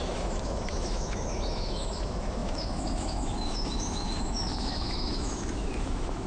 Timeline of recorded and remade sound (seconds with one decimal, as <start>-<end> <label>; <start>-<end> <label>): 0.0-6.3 remade